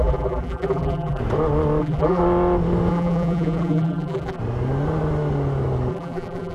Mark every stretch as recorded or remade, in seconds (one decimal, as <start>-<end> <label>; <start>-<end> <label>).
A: 0.0-1.2 remade; 1.2-1.8 recorded; 1.8-2.2 remade; 2.2-2.9 recorded; 2.9-4.4 remade; 4.4-5.9 recorded; 5.9-6.5 remade